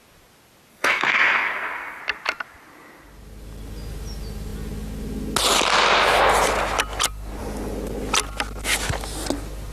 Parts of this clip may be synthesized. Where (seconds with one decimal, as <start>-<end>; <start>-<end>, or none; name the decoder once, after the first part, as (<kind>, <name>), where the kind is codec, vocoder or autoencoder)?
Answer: 0.7-2.0 (codec, SNAC)